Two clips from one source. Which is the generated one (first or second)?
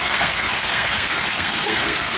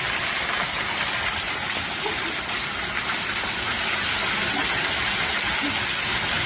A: first